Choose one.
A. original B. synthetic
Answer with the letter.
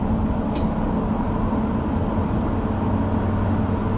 A